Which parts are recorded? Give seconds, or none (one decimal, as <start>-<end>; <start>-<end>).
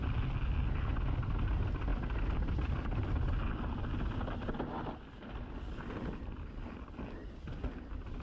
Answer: 0.0-8.2